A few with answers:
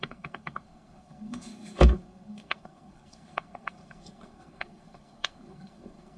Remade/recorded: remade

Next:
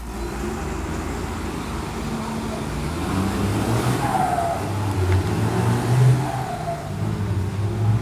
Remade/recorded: recorded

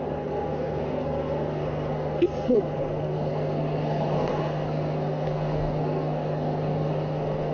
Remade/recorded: remade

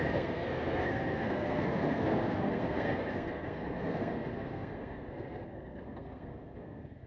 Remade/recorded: remade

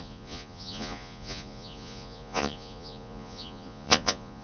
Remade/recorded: remade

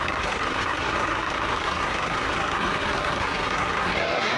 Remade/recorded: remade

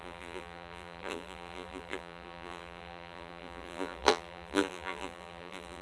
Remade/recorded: remade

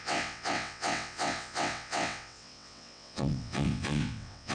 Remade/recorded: remade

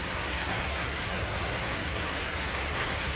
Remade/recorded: remade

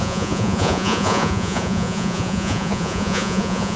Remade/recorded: remade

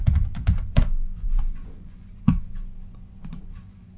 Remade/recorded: remade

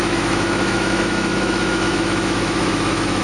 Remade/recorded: remade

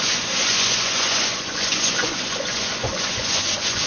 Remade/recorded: remade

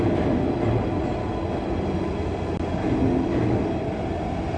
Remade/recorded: recorded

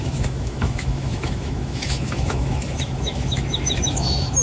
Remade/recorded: remade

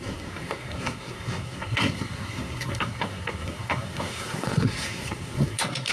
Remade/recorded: remade